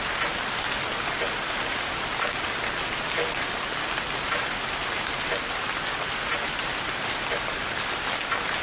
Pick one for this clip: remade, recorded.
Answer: recorded